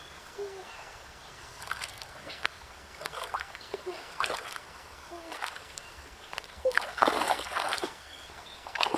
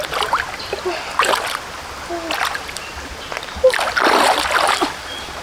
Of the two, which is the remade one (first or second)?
first